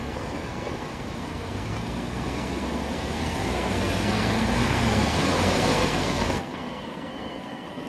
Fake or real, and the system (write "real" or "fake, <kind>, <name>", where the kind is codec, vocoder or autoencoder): fake, codec, SNAC